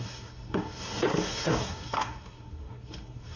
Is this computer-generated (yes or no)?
yes